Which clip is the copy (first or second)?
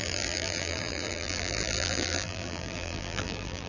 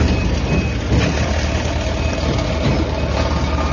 first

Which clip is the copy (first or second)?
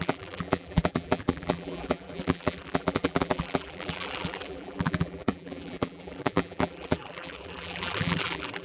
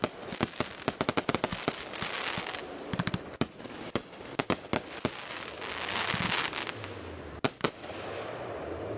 first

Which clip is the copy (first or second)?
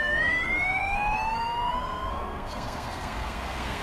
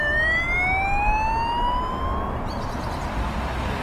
first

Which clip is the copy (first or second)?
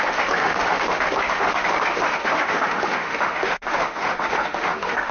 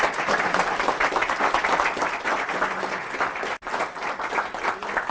first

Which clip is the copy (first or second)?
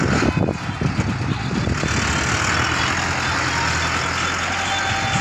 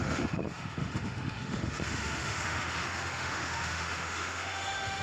second